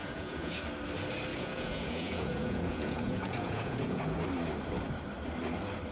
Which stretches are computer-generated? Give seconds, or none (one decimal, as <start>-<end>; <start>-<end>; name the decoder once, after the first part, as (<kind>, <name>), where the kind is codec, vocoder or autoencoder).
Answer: 0.0-0.6 (vocoder, Vocos); 1.3-4.0